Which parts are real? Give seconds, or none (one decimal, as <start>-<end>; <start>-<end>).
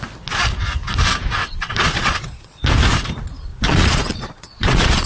0.0-1.4; 2.7-3.5